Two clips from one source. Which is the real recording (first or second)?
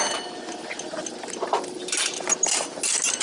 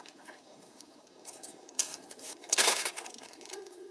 first